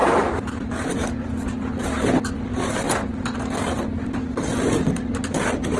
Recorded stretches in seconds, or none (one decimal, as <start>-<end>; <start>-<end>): 0.9-5.8